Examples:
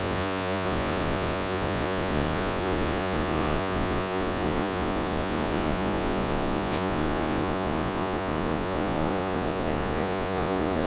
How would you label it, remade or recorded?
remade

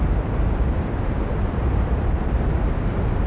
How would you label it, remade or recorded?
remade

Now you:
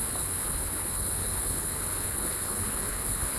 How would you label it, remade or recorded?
remade